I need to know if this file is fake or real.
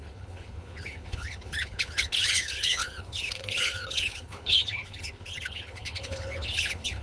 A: fake